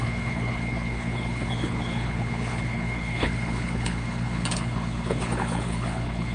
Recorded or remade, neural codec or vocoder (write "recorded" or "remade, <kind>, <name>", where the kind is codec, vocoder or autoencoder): remade, codec, HILCodec